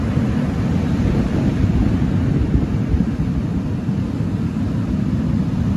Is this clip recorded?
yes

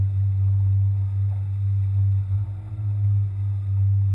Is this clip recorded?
yes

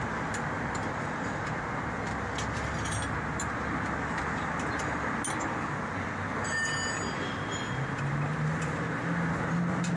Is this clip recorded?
yes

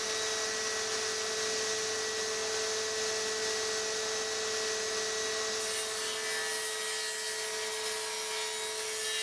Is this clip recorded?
yes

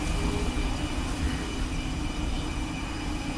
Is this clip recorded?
yes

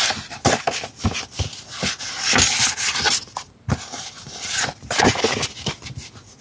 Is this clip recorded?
yes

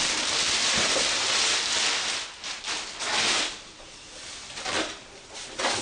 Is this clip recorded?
yes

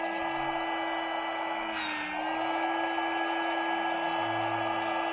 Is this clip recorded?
yes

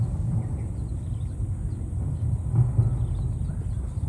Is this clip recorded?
yes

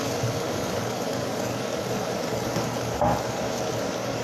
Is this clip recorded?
no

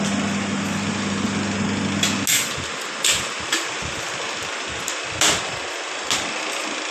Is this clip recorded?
yes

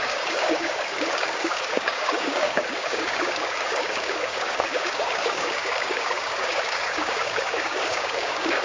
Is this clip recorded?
no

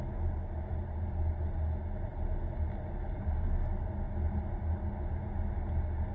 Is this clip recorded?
yes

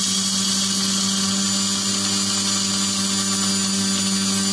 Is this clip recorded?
yes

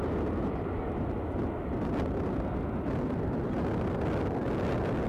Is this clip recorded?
yes